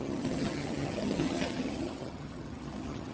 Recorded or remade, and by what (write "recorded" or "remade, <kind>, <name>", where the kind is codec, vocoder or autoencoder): remade, vocoder, HiFi-GAN